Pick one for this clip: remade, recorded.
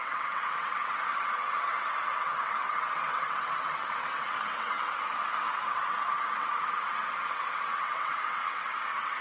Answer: remade